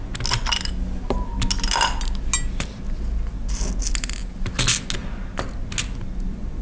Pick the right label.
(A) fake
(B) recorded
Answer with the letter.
B